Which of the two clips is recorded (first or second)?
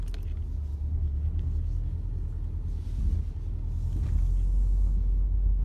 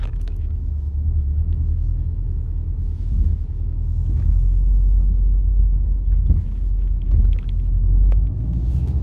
first